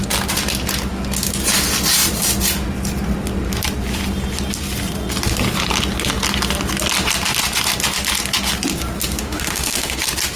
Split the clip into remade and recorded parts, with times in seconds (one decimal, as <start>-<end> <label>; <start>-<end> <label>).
0.0-9.2 recorded; 9.2-10.0 remade; 10.0-10.4 recorded